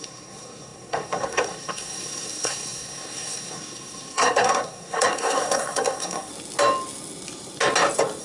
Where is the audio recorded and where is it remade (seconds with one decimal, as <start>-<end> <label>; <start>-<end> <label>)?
0.0-6.3 remade; 6.3-8.2 recorded